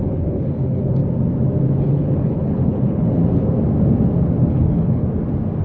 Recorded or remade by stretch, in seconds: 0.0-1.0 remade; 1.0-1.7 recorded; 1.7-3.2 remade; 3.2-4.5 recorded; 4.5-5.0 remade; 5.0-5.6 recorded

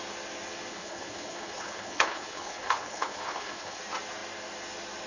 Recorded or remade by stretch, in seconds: 0.0-0.7 recorded; 0.7-3.8 remade; 3.8-5.1 recorded

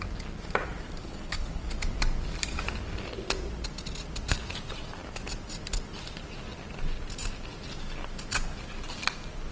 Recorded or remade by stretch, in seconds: 0.0-1.0 recorded; 1.0-1.6 remade; 1.6-9.5 recorded

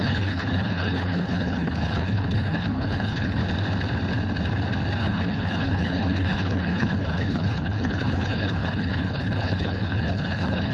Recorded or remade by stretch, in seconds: 0.0-3.4 remade; 3.4-5.0 recorded; 5.0-10.7 remade

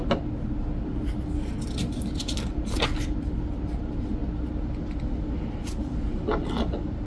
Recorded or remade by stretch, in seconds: 0.0-7.1 recorded

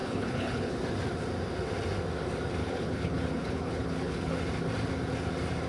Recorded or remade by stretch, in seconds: 0.0-0.8 remade; 0.8-2.6 recorded; 2.6-4.4 remade; 4.4-5.7 recorded

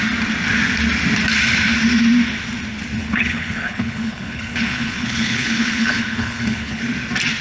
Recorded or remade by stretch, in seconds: 0.0-3.0 recorded; 3.0-6.8 remade; 6.8-7.4 recorded